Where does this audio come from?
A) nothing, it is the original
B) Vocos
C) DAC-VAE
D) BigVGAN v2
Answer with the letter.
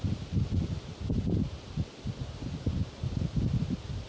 A